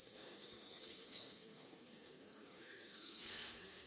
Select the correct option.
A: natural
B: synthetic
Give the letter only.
B